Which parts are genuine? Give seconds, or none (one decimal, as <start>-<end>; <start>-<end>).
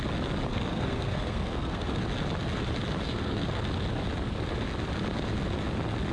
0.0-0.5; 2.0-3.0; 3.6-6.1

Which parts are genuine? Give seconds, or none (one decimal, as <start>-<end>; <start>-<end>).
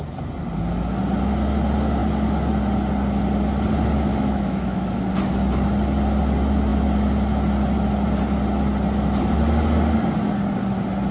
0.0-4.1; 5.0-11.1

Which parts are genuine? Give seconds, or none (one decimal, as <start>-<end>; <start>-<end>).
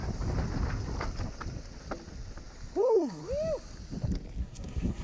0.0-2.8; 3.2-4.4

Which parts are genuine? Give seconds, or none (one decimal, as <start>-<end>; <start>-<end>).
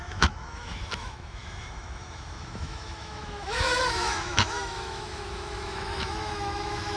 none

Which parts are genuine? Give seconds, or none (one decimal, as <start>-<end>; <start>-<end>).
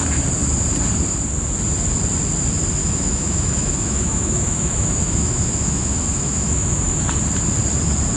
0.0-2.8; 7.0-8.2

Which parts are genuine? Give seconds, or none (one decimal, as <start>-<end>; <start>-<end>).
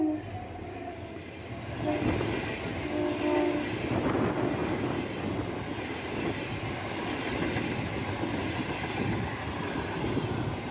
0.0-10.7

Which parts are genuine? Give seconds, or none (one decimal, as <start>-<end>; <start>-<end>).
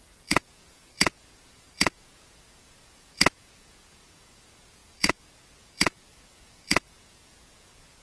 none